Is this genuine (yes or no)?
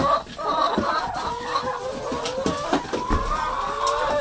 yes